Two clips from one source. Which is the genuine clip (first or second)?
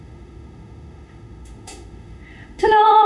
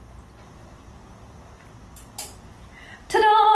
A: second